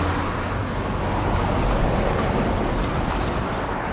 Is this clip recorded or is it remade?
recorded